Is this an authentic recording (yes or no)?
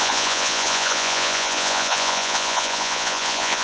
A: no